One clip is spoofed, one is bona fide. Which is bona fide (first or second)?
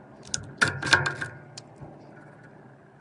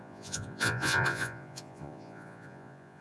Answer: first